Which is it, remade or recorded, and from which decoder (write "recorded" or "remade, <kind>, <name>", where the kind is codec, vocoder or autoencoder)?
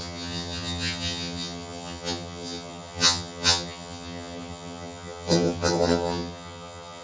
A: remade, vocoder, HiFi-GAN